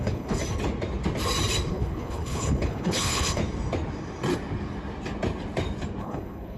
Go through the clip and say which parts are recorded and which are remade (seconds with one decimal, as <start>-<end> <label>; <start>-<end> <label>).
0.0-0.4 remade; 0.4-1.7 recorded; 1.7-3.4 remade; 3.4-6.0 recorded; 6.0-6.6 remade